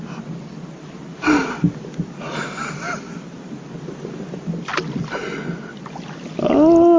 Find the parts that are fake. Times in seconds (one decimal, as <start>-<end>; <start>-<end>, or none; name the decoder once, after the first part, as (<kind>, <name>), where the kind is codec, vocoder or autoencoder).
none